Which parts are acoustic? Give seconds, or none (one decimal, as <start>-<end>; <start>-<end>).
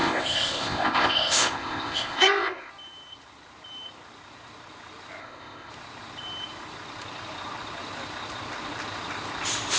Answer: 2.7-5.2; 5.7-9.8